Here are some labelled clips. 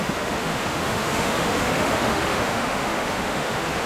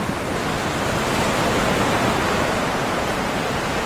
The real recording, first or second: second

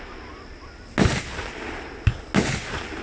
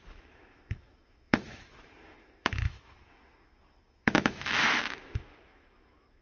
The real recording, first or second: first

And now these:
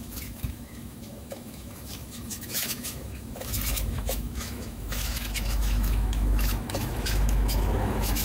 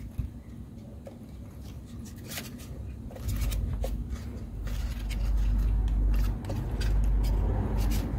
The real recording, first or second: second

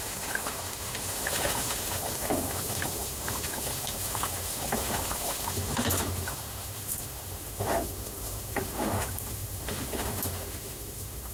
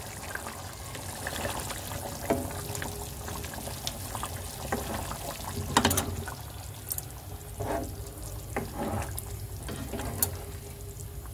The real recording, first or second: second